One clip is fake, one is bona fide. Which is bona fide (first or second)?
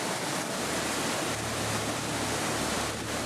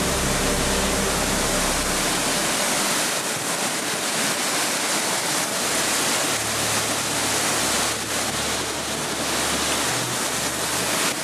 second